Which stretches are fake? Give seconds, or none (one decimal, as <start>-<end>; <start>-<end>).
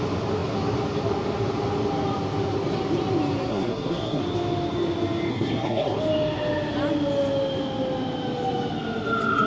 3.5-4.2; 5.3-6.0